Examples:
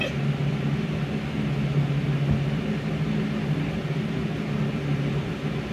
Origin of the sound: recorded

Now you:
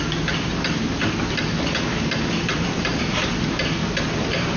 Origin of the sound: recorded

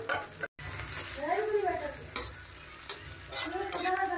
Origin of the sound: recorded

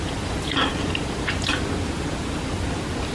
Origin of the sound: remade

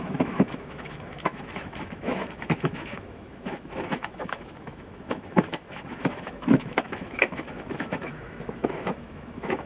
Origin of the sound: remade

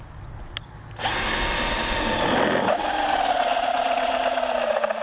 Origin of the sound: recorded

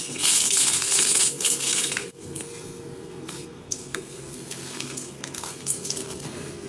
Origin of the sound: remade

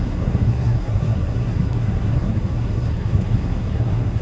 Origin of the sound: remade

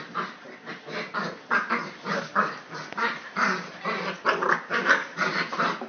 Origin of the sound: recorded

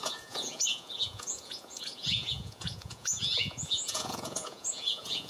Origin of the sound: remade